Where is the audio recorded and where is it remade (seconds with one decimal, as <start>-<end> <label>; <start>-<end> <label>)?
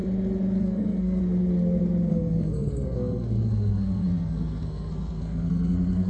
0.0-0.6 recorded; 0.6-1.2 remade; 1.2-2.1 recorded; 2.1-6.1 remade